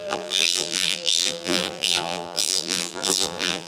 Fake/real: fake